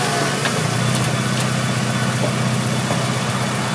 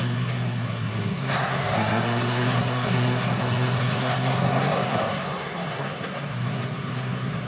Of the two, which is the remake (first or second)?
second